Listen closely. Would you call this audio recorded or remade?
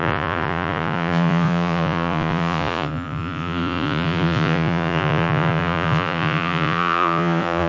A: remade